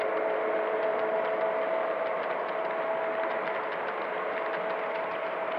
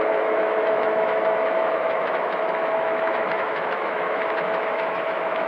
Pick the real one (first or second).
first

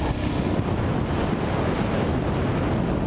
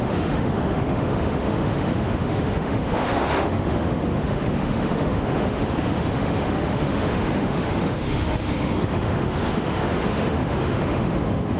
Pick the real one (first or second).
first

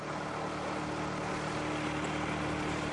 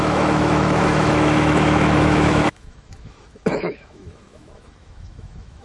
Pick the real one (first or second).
first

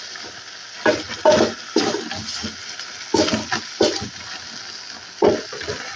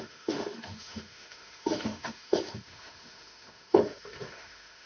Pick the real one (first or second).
first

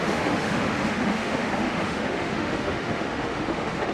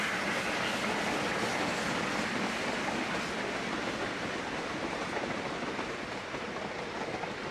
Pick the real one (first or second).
second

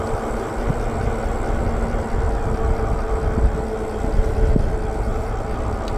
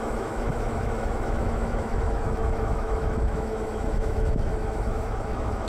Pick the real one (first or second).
first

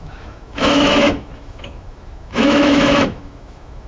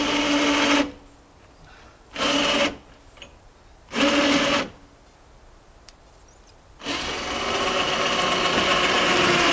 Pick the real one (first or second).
second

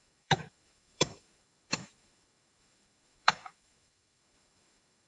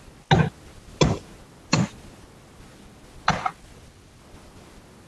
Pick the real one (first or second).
second